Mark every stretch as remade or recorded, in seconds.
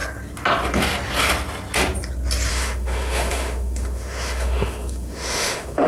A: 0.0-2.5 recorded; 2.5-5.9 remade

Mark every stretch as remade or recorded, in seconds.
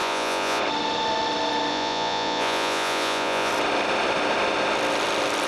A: 0.0-0.6 remade; 0.6-1.7 recorded; 1.7-3.5 remade; 3.5-5.5 recorded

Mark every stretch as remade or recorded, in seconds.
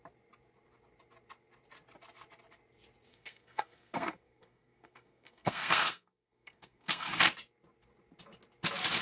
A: 0.0-3.1 recorded; 3.1-7.1 remade; 7.1-9.0 recorded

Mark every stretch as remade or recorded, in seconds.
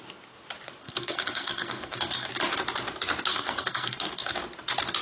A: 0.0-0.8 recorded; 0.8-2.3 remade; 2.3-3.3 recorded; 3.3-4.4 remade; 4.4-5.0 recorded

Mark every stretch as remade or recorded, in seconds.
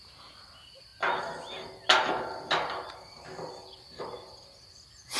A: 0.0-5.2 recorded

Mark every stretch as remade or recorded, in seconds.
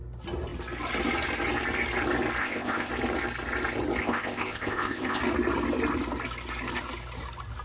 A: 0.0-2.4 recorded; 2.4-2.9 remade; 2.9-4.0 recorded; 4.0-5.2 remade; 5.2-7.6 recorded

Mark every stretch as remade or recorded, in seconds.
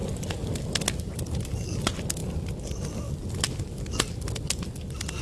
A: 0.0-5.2 recorded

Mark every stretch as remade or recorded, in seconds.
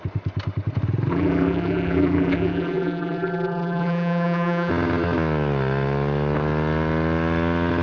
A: 0.0-1.1 recorded; 1.1-4.7 remade; 4.7-7.8 recorded